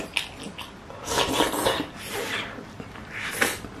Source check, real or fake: real